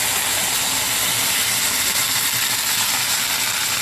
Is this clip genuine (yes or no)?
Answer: yes